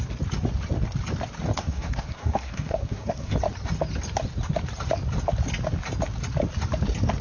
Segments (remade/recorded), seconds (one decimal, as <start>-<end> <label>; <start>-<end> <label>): 0.0-1.6 recorded; 1.6-3.3 remade; 3.3-7.2 recorded